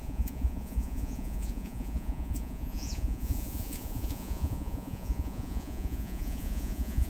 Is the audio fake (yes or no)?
yes